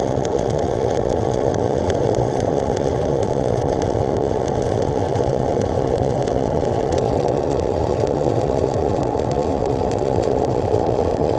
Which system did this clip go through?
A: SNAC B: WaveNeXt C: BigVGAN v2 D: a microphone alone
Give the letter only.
B